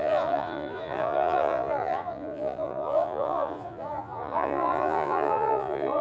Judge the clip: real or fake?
fake